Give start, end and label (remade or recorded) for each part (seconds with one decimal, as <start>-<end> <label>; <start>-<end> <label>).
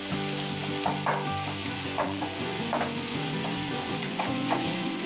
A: 0.0-1.6 recorded; 1.6-5.1 remade